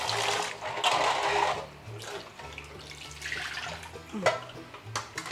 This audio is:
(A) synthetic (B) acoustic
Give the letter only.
B